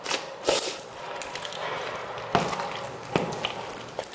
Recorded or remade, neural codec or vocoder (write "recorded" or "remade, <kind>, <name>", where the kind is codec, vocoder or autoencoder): recorded